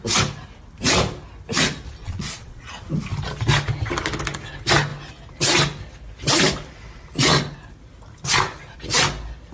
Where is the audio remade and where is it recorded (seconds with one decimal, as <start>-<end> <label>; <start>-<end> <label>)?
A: 0.0-2.0 recorded; 2.0-2.7 remade; 2.7-9.5 recorded